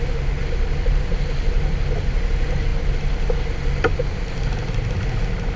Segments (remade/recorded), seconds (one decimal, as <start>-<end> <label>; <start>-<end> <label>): 0.0-5.6 recorded